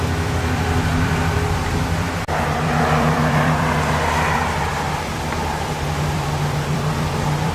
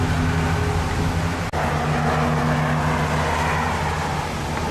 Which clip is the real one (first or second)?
second